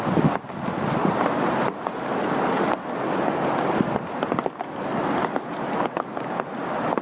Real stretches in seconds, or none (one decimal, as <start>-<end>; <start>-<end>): 0.0-1.0; 2.1-7.0